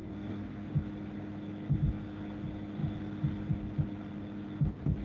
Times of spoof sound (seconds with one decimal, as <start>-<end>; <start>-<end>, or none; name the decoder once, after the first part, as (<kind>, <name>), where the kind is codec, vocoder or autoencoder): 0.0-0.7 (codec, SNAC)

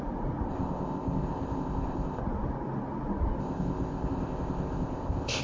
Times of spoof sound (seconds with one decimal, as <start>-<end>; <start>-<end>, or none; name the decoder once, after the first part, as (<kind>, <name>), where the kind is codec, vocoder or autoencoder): 0.5-2.2 (codec, ZipCodec); 3.4-5.4

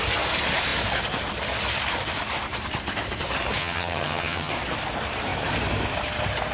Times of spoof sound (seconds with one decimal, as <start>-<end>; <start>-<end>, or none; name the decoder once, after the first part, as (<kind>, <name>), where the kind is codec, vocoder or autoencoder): 3.6-4.5 (vocoder, HiFi-GAN)